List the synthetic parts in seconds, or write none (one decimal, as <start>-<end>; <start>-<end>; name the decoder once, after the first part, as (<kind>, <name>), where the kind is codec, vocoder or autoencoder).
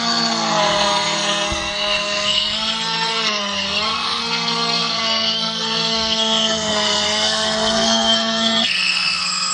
0.0-9.5 (codec, SNAC)